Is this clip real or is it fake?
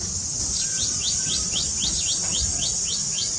real